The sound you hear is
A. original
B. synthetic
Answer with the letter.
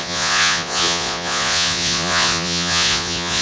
B